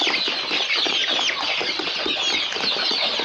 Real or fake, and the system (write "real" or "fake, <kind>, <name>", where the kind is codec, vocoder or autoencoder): real